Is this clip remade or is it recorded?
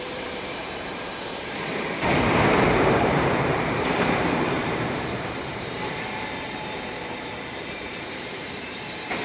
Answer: remade